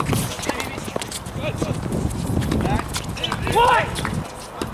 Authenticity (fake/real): real